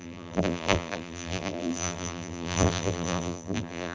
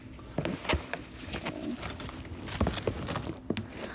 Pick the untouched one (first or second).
second